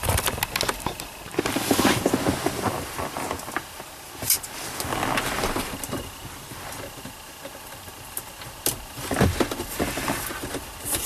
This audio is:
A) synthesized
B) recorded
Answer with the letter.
B